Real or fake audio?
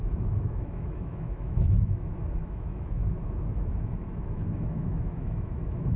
fake